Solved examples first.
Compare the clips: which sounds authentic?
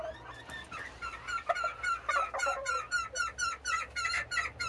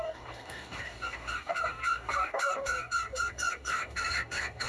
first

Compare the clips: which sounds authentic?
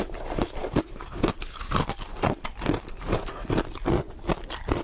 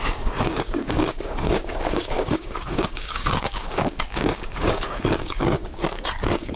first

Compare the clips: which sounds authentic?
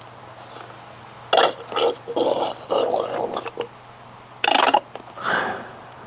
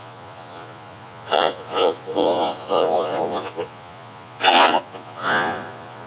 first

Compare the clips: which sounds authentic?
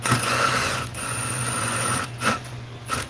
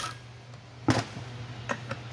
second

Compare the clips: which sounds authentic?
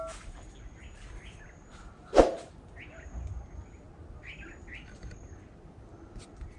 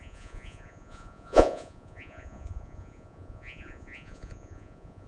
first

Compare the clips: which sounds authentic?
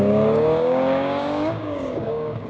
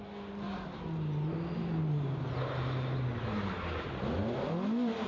second